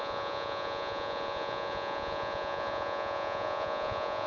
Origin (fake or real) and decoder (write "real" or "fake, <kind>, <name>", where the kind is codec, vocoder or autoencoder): fake, vocoder, Vocos